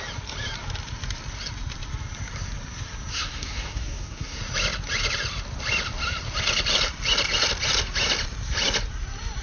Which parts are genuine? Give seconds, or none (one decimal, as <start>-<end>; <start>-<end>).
0.0-3.1; 4.4-9.4